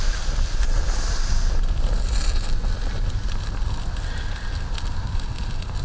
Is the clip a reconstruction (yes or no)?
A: no